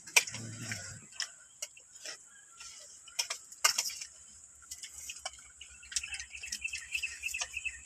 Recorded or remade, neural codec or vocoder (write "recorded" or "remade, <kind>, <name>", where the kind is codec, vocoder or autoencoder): recorded